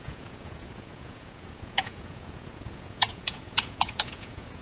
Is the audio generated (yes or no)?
yes